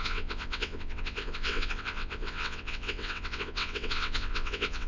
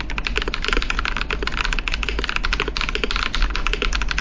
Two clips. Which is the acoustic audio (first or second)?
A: second